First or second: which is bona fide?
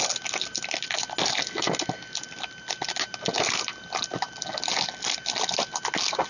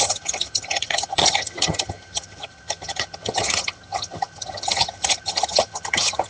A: first